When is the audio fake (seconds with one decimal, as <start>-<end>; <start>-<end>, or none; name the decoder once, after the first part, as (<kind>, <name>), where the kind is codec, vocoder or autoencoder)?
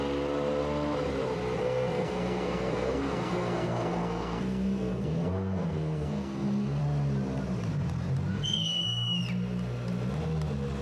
1.6-6.8 (codec, SNAC); 8.3-9.2